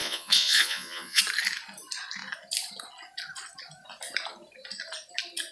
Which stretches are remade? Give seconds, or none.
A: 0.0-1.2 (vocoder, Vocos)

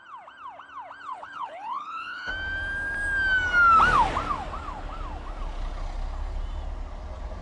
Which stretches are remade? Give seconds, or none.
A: 1.1-2.3 (codec, HILCodec)

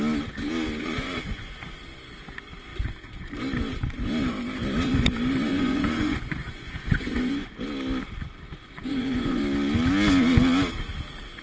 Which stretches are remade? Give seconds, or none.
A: 0.8-1.8 (vocoder, Vocos); 5.5-7.5; 8.6-9.4

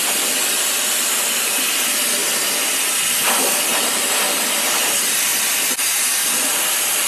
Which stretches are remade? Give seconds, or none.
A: 0.0-5.3 (vocoder, BigVGAN v2); 6.2-7.1

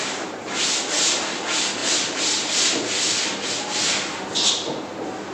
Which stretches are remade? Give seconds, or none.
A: 1.8-4.5 (vocoder, BigVGAN v2)